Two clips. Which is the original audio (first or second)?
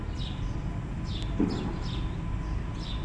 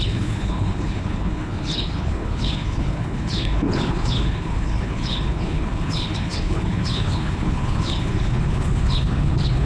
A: first